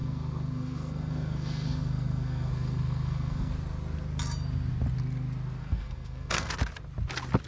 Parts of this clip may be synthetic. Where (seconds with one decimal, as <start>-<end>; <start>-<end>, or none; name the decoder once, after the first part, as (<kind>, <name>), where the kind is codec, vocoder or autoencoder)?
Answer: 0.0-3.5 (codec, SNAC); 5.6-6.5